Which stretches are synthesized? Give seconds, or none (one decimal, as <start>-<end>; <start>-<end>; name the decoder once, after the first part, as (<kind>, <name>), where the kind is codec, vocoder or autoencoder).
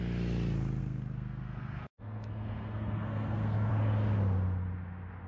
0.8-3.7 (codec, SNAC)